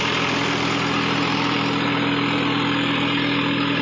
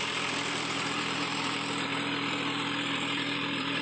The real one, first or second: first